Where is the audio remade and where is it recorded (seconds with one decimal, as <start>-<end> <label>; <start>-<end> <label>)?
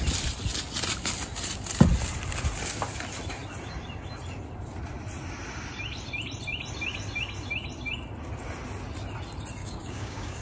0.0-9.6 recorded; 9.6-10.4 remade